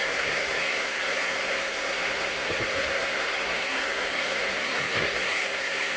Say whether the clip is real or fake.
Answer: fake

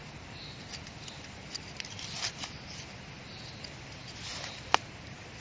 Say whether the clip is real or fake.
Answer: real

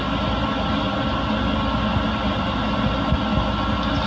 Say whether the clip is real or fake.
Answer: real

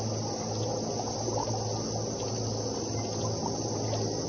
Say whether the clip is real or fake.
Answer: real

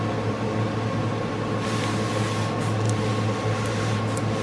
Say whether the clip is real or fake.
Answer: real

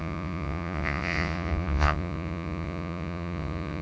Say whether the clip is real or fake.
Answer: fake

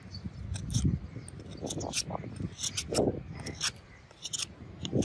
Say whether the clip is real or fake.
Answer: real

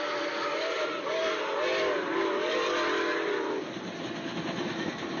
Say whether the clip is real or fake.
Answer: real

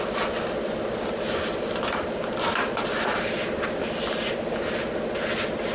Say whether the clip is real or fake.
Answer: real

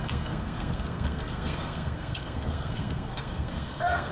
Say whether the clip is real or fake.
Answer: fake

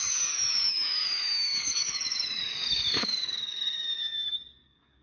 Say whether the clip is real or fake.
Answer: fake